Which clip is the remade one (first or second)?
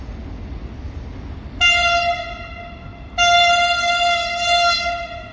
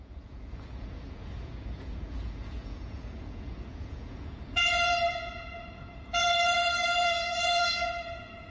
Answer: second